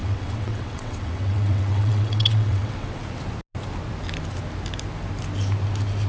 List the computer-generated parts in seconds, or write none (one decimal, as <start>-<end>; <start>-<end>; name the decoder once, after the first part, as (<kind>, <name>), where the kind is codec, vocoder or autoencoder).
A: 0.0-3.0 (vocoder, WaveNeXt)